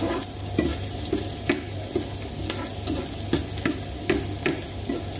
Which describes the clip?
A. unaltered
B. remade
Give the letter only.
A